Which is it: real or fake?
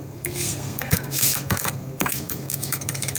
fake